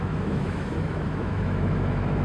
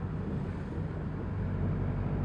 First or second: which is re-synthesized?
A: first